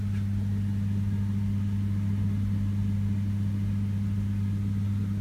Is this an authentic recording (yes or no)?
yes